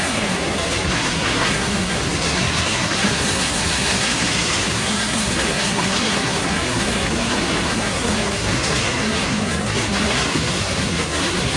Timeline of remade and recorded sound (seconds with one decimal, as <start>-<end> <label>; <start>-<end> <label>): 0.0-11.6 remade